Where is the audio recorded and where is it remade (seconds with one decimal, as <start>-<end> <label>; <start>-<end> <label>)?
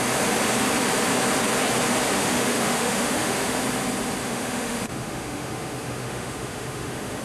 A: 0.0-2.2 recorded; 2.2-3.6 remade; 3.6-4.2 recorded; 4.2-7.2 remade